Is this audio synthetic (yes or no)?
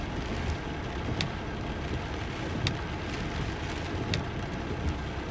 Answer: no